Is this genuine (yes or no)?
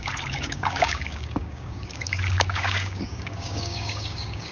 no